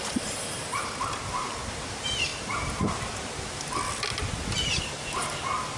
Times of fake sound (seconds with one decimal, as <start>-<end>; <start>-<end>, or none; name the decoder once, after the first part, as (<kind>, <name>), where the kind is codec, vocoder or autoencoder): 0.0-2.3 (vocoder, BigVGAN v2); 4.8-5.8